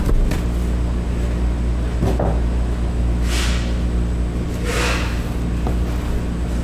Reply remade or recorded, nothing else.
recorded